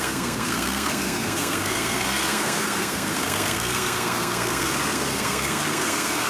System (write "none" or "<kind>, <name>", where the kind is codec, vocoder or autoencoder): codec, SNAC